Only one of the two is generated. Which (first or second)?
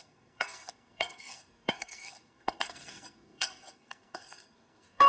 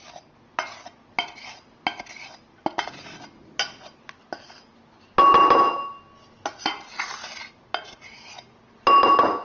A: first